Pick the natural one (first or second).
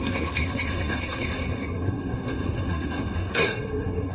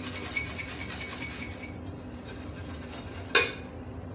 second